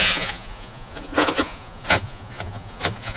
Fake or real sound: fake